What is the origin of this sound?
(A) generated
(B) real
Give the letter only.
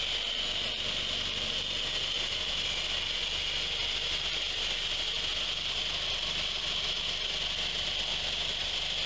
B